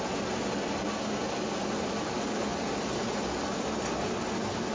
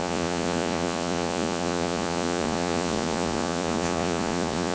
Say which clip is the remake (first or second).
second